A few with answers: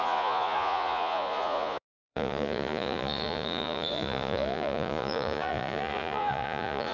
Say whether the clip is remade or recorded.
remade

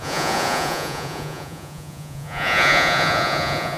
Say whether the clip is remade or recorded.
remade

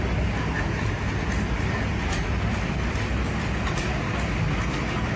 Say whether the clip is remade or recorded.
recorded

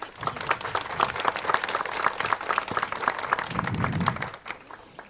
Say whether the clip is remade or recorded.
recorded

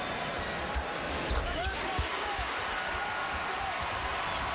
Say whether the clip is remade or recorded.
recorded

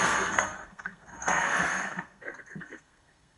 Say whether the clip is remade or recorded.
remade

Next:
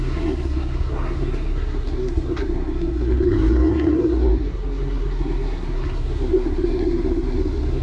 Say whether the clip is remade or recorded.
remade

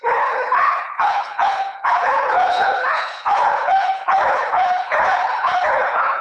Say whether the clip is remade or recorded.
remade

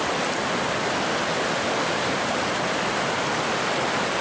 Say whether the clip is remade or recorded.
recorded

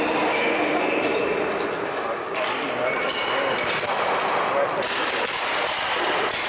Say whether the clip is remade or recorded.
recorded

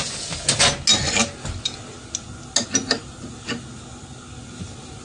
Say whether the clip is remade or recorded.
recorded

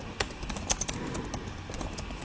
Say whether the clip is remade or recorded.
recorded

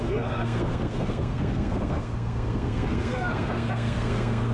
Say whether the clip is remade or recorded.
remade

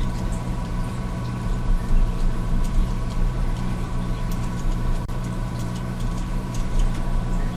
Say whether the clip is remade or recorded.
remade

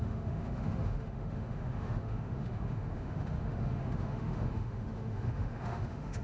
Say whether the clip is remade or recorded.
remade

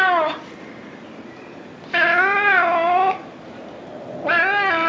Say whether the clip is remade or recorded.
recorded